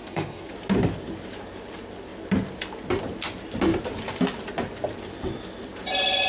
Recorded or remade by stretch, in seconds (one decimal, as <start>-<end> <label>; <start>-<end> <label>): 0.0-0.5 remade; 0.5-6.3 recorded